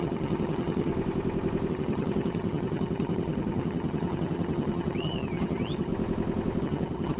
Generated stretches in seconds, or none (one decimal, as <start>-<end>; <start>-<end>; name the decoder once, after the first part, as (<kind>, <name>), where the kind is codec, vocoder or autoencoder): 0.0-0.9 (vocoder, HiFi-GAN); 1.7-5.9; 6.6-7.2